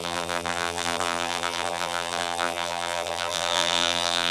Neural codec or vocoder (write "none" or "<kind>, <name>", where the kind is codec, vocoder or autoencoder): vocoder, BigVGAN v2